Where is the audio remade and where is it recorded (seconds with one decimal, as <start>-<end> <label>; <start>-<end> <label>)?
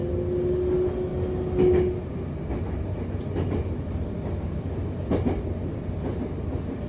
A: 0.0-6.9 recorded